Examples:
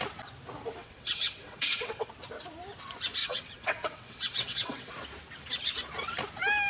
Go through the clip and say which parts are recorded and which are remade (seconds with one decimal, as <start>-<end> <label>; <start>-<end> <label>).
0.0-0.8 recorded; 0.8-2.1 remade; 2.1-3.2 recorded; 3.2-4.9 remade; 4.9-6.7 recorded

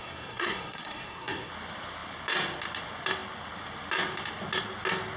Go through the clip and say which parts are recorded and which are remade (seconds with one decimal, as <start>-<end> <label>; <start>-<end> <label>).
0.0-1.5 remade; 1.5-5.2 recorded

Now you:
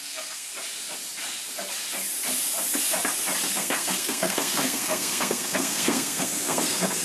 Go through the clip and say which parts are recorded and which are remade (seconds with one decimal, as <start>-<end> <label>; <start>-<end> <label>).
0.0-0.5 remade; 0.5-3.5 recorded; 3.5-7.0 remade

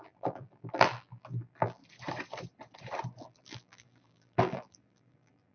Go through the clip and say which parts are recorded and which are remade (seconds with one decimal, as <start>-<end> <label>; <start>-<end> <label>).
0.0-1.8 remade; 1.8-3.2 recorded; 3.2-5.5 remade

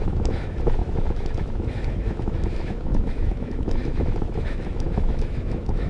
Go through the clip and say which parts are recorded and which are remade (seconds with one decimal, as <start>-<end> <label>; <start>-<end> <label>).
0.0-5.9 remade